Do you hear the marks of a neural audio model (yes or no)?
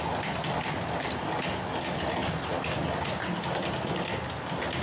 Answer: no